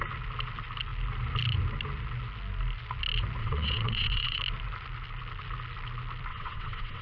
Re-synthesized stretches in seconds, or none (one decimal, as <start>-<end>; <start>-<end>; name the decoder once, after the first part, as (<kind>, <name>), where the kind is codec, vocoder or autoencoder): 3.4-4.4 (vocoder, WaveNeXt); 6.3-7.0

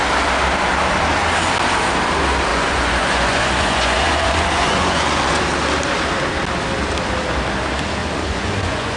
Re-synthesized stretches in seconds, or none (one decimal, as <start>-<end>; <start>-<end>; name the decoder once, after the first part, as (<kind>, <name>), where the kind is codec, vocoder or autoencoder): 2.5-5.4 (vocoder, Vocos); 8.0-9.0

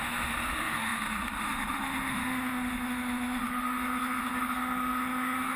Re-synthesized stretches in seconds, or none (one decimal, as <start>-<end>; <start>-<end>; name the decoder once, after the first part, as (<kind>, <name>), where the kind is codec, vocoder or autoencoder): 0.0-5.6 (autoencoder, DAC-VAE)

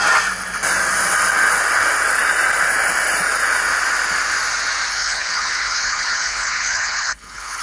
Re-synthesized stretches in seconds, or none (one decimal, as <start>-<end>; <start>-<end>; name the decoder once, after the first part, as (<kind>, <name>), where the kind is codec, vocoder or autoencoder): 4.9-7.6 (codec, HILCodec)